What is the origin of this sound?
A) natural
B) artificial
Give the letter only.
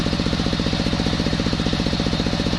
B